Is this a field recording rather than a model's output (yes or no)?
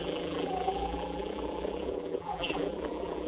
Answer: no